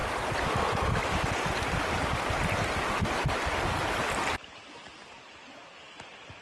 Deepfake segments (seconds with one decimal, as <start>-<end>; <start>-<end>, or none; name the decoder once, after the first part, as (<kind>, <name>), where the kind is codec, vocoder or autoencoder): 3.8-4.6 (vocoder, BigVGAN v2)